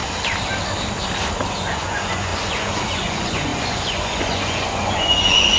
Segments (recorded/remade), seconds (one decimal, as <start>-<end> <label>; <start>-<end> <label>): 0.0-1.5 recorded; 1.5-5.6 remade